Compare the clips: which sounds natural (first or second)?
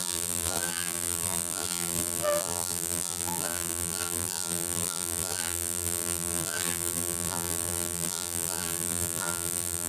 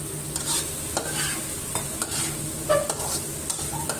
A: second